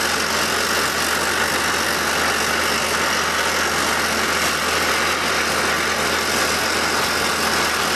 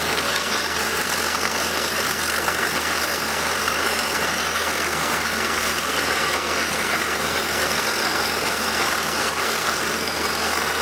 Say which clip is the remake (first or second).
second